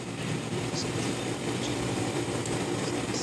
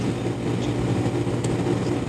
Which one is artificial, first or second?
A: first